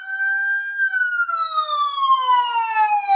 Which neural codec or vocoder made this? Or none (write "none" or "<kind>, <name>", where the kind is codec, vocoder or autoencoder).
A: none